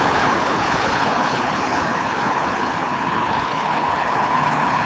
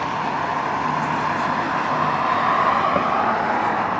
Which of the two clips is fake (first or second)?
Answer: first